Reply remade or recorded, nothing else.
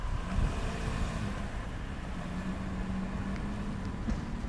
recorded